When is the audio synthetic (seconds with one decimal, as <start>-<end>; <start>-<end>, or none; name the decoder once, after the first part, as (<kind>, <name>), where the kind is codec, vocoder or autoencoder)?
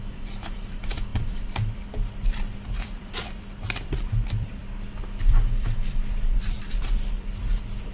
0.0-4.6 (vocoder, BigVGAN v2); 5.3-7.9